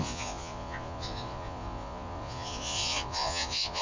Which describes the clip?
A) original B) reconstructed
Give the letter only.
B